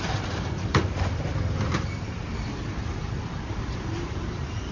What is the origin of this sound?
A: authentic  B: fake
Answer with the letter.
B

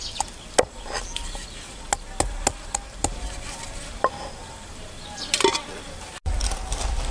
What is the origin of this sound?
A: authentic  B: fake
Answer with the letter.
A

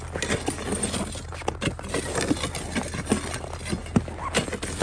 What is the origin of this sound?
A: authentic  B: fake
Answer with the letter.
A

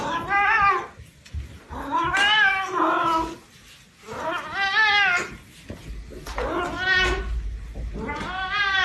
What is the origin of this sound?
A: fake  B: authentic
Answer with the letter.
B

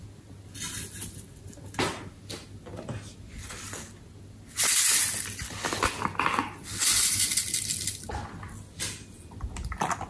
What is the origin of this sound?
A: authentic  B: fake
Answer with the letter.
A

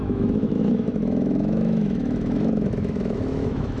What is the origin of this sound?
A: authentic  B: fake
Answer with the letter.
B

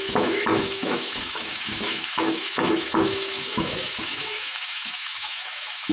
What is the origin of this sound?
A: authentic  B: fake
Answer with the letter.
B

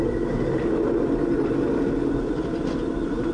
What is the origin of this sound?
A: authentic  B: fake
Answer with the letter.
A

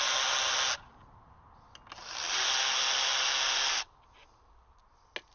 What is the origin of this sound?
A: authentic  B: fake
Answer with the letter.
A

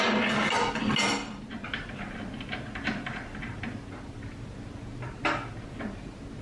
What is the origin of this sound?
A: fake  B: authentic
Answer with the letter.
B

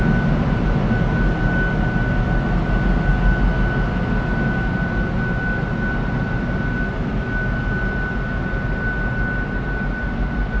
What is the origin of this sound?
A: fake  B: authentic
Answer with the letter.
B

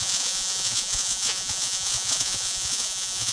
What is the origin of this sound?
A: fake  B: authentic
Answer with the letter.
A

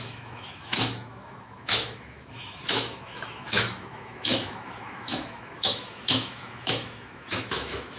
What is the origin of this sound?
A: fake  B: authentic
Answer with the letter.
A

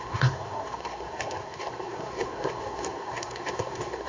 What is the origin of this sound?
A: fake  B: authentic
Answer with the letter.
A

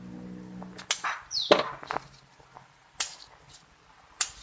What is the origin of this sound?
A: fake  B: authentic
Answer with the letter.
B